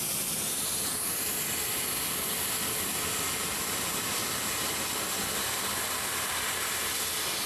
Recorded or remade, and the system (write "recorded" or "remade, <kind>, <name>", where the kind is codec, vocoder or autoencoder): recorded